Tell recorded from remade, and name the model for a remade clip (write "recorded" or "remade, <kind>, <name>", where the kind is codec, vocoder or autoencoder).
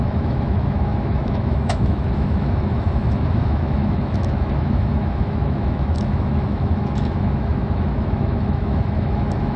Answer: remade, autoencoder, DAC-VAE